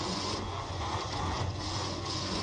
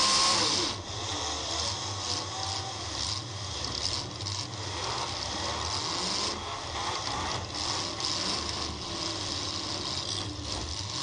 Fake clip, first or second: first